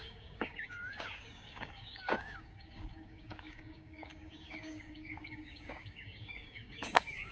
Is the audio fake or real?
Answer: fake